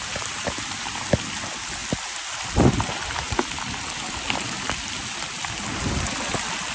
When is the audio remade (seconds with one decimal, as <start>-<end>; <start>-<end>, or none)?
0.0-1.0